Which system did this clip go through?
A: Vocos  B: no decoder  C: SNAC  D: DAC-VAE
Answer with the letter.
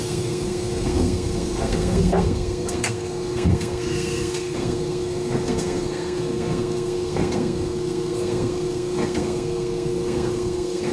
C